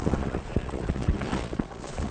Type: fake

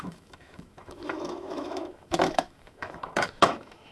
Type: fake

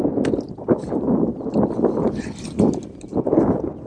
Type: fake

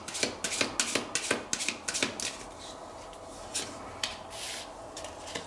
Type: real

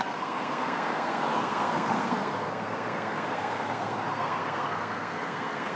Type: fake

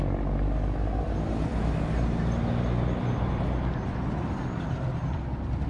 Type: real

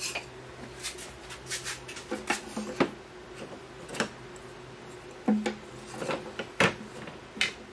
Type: real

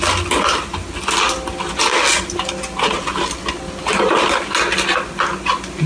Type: real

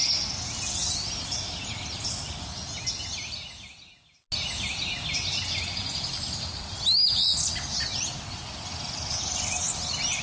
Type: real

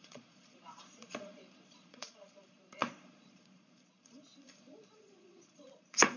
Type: fake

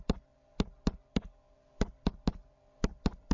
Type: real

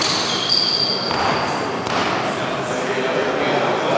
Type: real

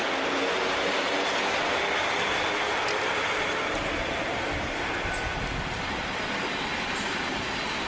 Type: real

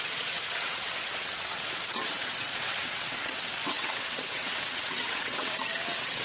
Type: fake